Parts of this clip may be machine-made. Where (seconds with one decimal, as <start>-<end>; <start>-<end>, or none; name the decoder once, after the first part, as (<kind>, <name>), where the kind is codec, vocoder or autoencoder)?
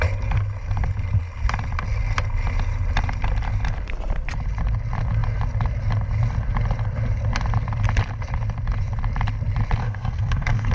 9.8-10.7 (codec, SNAC)